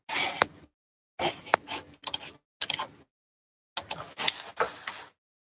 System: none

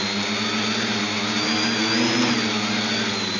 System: none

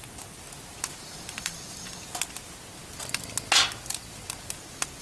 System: none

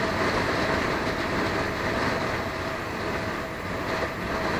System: none